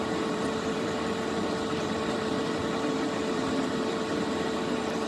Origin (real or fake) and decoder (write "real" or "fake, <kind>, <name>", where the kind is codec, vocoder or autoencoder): fake, vocoder, BigVGAN v2